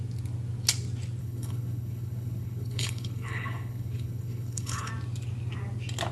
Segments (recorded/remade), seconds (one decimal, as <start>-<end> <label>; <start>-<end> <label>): 0.0-1.2 recorded; 1.2-4.9 remade; 4.9-6.1 recorded